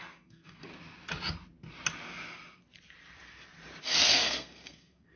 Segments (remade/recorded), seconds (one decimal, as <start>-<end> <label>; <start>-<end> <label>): 0.0-0.7 remade; 0.7-3.8 recorded; 3.8-5.2 remade

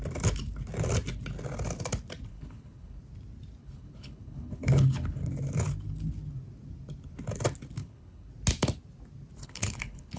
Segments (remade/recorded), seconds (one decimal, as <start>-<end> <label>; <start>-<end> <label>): 0.0-2.3 recorded; 2.3-3.0 remade; 3.0-3.6 recorded; 3.6-5.3 remade; 5.3-7.8 recorded; 7.8-8.3 remade; 8.3-9.4 recorded; 9.4-10.2 remade